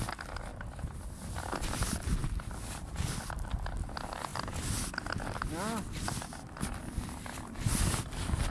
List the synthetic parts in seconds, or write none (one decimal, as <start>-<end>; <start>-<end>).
none